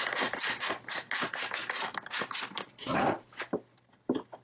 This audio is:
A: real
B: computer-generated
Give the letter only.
A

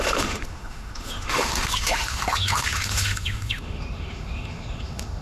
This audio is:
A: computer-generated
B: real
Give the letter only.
A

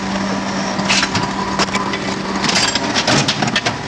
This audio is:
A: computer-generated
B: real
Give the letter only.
B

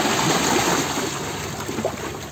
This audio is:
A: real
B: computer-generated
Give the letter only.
A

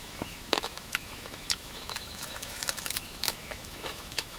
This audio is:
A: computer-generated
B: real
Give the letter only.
A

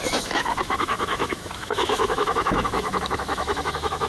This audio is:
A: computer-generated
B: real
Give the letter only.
A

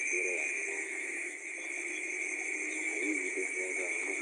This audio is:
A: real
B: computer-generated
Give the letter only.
B